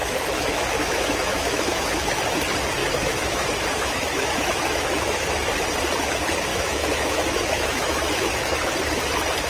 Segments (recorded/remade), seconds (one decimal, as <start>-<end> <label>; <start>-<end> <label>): 0.0-2.2 remade; 2.2-2.8 recorded; 2.8-5.5 remade; 5.5-6.5 recorded; 6.5-8.7 remade; 8.7-9.5 recorded